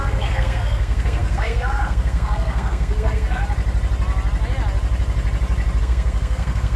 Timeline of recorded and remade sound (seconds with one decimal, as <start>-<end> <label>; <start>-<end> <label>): 0.0-3.4 remade; 3.4-5.8 recorded; 5.8-6.8 remade